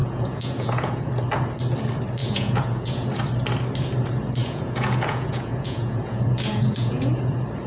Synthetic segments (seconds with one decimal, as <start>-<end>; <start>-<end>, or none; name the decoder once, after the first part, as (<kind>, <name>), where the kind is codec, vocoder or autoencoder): 0.0-1.1 (vocoder, Vocos); 2.2-3.1; 4.4-7.2